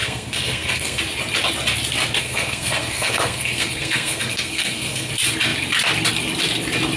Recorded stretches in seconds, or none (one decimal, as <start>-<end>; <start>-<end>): 1.0-2.2; 5.1-7.0